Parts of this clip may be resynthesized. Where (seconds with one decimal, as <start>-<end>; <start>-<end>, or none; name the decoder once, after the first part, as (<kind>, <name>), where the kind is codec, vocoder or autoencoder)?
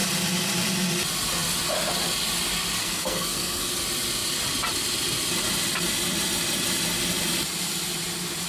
2.8-3.7 (codec, SNAC)